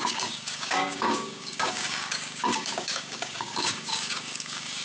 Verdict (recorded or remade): remade